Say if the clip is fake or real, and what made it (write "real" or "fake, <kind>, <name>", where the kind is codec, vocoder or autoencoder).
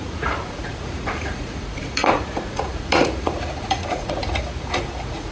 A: fake, vocoder, Vocos